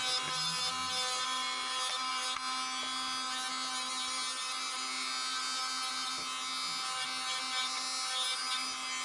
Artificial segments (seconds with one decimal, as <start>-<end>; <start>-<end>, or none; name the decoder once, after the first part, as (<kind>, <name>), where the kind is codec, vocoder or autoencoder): none